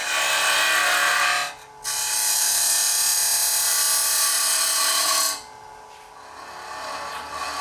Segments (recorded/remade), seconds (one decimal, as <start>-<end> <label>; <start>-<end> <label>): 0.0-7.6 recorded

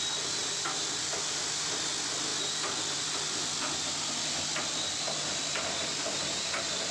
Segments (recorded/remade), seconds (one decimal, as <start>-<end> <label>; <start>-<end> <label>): 0.0-0.4 recorded; 0.4-1.1 remade; 1.1-2.3 recorded; 2.3-3.7 remade; 3.7-6.9 recorded

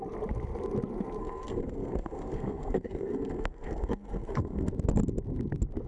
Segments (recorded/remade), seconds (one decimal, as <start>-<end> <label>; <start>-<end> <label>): 0.0-1.2 recorded; 1.2-4.7 remade; 4.7-5.9 recorded